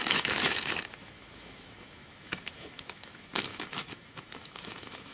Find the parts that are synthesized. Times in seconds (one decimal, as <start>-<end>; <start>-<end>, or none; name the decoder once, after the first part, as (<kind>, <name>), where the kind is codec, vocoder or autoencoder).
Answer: 0.0-5.1 (autoencoder, DAC-VAE)